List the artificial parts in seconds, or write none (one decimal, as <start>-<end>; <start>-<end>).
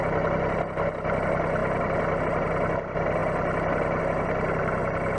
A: none